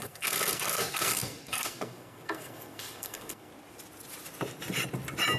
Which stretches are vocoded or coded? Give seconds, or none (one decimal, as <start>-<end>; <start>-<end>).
0.0-3.5